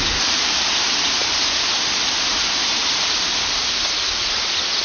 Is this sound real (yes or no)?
no